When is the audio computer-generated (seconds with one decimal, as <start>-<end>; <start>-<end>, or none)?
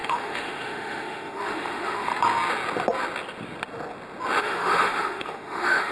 0.0-2.1; 4.4-5.9